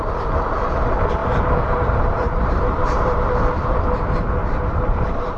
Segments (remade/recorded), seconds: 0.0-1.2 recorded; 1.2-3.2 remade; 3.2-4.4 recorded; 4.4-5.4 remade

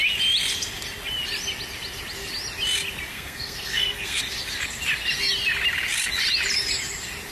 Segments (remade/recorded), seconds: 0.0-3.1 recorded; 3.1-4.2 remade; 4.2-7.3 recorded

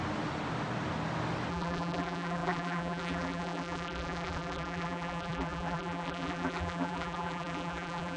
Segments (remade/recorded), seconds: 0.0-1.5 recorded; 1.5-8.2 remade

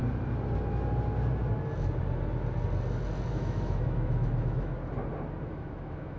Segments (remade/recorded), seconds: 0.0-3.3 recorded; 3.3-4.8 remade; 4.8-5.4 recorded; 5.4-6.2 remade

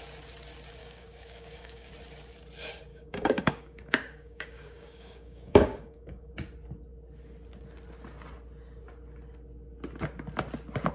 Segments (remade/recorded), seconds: 0.0-0.8 recorded; 0.8-1.9 remade; 1.9-2.9 recorded; 2.9-6.3 remade; 6.3-10.9 recorded